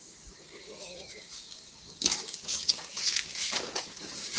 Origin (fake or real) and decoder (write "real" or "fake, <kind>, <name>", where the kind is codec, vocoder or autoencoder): fake, codec, DAC